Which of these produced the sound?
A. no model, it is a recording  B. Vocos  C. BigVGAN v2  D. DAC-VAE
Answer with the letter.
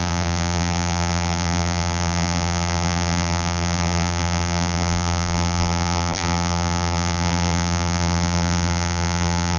C